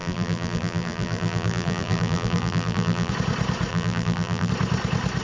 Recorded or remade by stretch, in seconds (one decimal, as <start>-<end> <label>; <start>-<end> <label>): 0.0-3.1 remade; 3.1-3.7 recorded; 3.7-4.5 remade; 4.5-5.2 recorded